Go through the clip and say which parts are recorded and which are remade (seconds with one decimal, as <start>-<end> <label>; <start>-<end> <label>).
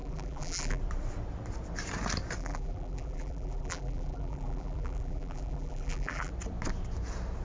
0.0-0.8 remade; 0.8-2.4 recorded; 2.4-6.3 remade; 6.3-7.4 recorded